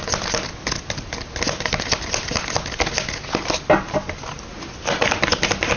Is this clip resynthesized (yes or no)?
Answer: no